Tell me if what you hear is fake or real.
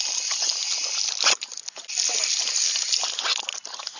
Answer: real